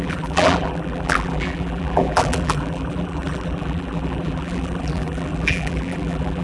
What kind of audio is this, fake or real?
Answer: fake